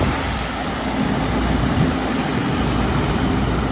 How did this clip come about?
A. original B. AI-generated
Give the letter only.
A